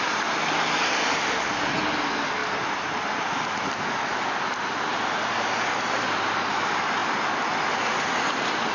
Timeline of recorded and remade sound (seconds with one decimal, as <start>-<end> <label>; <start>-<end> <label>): 0.0-8.7 recorded